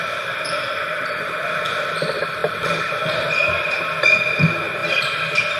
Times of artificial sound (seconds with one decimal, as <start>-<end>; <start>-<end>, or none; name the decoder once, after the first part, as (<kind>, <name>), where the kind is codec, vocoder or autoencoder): 2.4-3.7 (vocoder, BigVGAN v2); 4.8-5.6

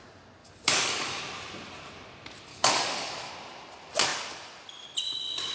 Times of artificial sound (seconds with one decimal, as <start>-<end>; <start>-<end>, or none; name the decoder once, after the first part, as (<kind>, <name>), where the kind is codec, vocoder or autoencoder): 0.4-1.2 (codec, DAC); 2.5-3.3

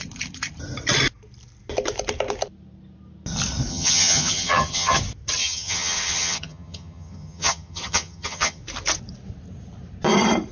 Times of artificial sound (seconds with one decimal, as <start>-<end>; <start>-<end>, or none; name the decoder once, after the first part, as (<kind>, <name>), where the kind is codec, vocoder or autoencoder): 3.7-5.0 (vocoder, HiFi-GAN); 5.4-8.6

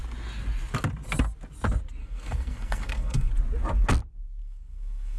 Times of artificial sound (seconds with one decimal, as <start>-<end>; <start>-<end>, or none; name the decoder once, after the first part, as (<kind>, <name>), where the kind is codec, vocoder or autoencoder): 2.0-3.3 (codec, SNAC); 4.4-5.2

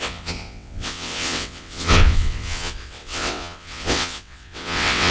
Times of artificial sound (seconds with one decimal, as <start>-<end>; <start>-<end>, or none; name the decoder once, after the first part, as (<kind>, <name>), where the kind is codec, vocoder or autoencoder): 0.0-5.1 (vocoder, WaveNeXt)